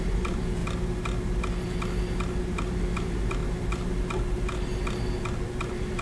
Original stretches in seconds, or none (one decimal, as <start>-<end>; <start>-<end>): 0.6-3.0; 3.4-5.6